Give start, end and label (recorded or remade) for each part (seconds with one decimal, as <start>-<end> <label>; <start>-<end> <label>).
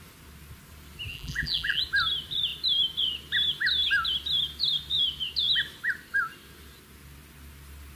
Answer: 0.0-1.1 recorded; 1.1-1.8 remade; 1.8-8.0 recorded